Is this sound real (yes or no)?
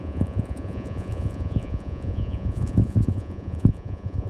no